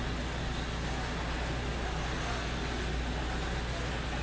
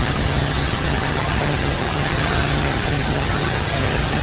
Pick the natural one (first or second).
first